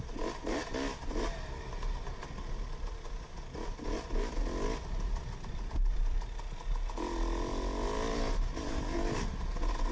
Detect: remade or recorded recorded